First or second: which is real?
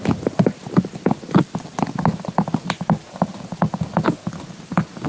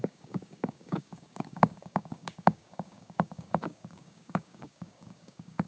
first